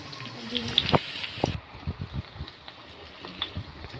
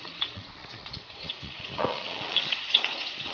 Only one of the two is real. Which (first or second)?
first